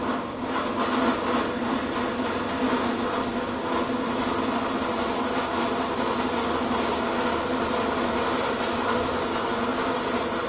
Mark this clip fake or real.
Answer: real